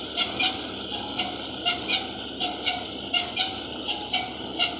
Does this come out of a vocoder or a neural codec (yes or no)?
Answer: no